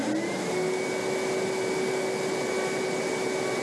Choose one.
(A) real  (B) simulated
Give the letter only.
A